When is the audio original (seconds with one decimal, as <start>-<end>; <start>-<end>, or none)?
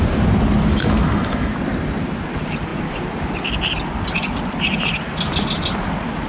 0.0-0.7; 1.5-6.3